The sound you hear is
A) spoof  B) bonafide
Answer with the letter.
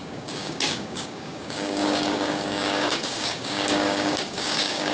A